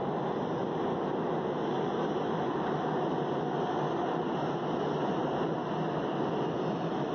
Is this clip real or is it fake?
real